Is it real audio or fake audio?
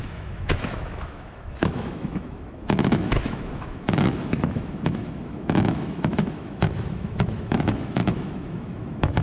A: fake